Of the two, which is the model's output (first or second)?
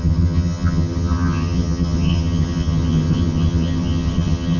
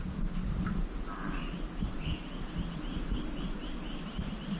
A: first